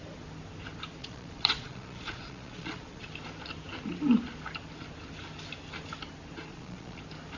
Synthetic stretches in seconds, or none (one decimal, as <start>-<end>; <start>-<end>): 1.0-3.1; 6.5-7.0